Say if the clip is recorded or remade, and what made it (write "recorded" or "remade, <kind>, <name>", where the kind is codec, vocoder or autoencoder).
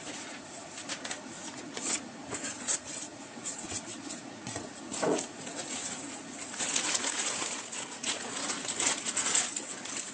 remade, vocoder, Vocos